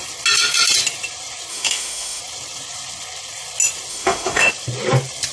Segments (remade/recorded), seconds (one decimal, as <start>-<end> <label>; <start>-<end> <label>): 0.0-1.5 recorded; 1.5-2.2 remade; 2.2-3.9 recorded; 3.9-4.5 remade; 4.5-5.3 recorded